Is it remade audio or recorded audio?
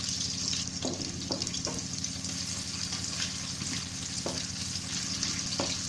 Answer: recorded